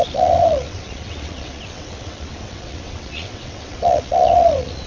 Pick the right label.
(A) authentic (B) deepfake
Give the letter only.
B